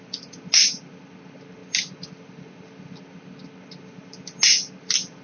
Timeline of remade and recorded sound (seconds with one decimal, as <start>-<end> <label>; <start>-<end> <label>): 0.0-5.2 recorded